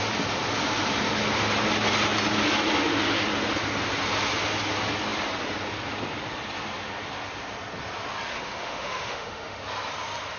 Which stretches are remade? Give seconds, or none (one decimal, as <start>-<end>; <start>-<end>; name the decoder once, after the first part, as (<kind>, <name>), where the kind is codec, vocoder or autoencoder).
8.3-9.6 (autoencoder, DAC-VAE)